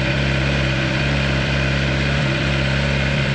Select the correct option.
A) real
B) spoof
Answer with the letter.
B